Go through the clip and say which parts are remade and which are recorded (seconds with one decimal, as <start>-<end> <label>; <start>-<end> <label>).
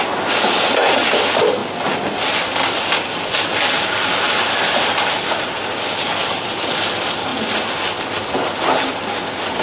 0.0-9.6 recorded